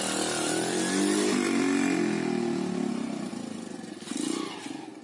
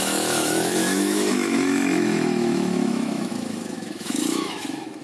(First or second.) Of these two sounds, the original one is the first